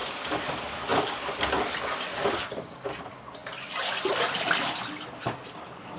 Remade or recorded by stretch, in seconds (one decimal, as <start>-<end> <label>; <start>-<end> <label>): 0.0-0.5 remade; 0.5-3.4 recorded; 3.4-3.9 remade; 3.9-6.0 recorded